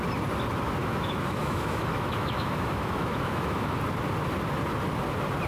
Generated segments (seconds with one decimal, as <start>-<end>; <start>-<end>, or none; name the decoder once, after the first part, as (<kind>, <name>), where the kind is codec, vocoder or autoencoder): 0.8-3.7 (autoencoder, DAC-VAE)